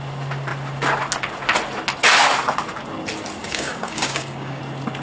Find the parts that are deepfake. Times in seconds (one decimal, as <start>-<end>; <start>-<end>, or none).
3.4-4.6